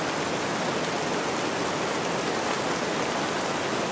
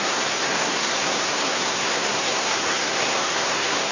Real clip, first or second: first